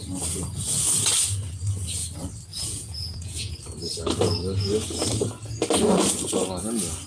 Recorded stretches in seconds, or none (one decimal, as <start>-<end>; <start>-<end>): 0.0-2.5; 3.5-7.1